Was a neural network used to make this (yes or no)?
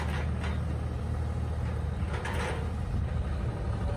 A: no